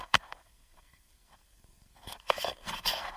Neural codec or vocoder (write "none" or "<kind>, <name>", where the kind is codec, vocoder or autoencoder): codec, SNAC